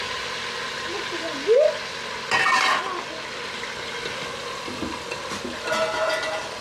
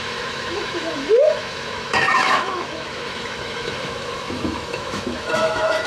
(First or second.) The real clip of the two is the first